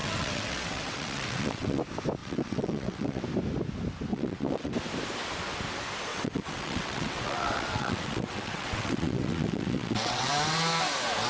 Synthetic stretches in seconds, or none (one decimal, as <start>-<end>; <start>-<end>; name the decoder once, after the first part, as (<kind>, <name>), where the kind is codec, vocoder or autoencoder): 0.0-1.8 (vocoder, WaveNeXt); 2.2-3.2; 4.1-4.7; 6.1-10.3